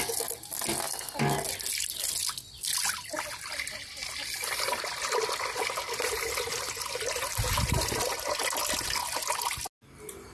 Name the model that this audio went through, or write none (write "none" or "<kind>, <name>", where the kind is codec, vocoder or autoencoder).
none